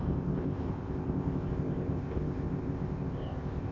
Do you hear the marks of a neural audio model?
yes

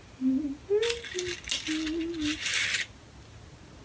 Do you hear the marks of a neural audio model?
no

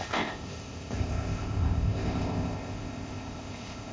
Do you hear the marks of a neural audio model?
yes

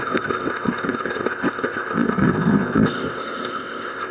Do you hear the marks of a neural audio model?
yes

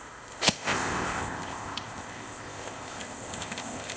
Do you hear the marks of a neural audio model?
yes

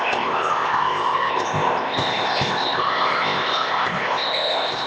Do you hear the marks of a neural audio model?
yes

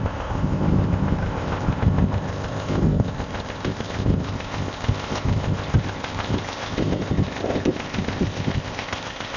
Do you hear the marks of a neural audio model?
yes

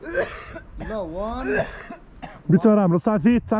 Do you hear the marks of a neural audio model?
no